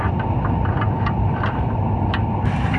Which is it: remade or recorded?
recorded